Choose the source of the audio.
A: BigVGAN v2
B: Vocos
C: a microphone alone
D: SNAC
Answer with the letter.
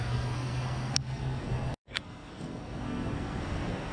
D